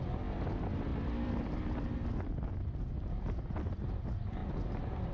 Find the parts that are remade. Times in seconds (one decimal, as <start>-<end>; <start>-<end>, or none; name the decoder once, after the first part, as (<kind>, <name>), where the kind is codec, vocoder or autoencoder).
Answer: 0.9-4.0 (vocoder, BigVGAN v2); 4.4-5.1